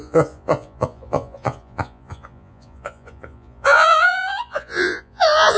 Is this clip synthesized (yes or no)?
yes